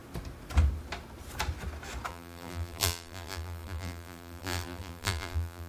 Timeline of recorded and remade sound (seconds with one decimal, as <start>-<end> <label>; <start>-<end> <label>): 0.0-2.1 recorded; 2.1-5.7 remade